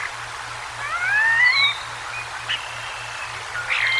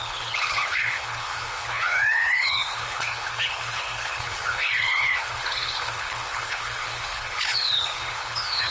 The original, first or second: first